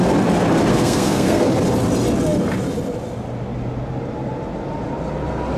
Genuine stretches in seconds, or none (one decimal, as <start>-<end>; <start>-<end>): 0.0-0.7; 1.5-5.6